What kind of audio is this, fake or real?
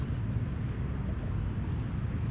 real